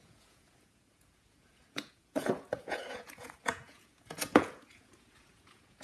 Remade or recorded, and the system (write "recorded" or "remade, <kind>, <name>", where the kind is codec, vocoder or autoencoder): remade, vocoder, Vocos